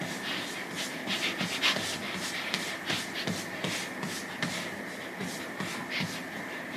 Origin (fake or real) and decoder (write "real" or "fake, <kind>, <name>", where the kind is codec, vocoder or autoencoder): real